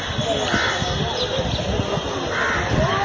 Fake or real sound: real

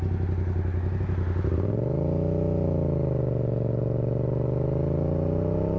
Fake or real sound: real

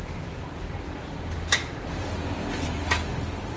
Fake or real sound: real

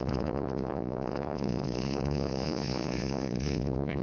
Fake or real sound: fake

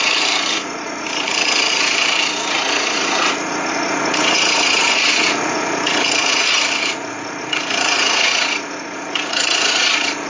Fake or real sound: fake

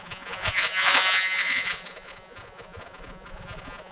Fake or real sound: fake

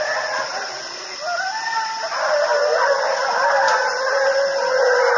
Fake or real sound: real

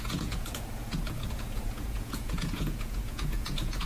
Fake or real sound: fake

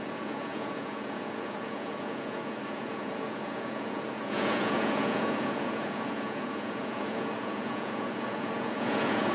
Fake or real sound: fake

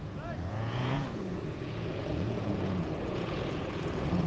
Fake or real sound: fake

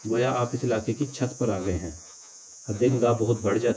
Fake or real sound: fake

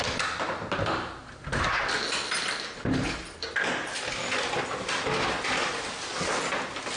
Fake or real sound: real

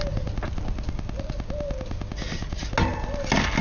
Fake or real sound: real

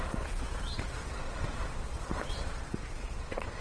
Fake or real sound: fake